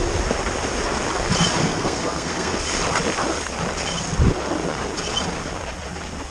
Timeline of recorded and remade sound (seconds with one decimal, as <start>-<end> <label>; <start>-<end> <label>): 0.0-1.6 recorded; 1.6-2.6 remade; 2.6-6.3 recorded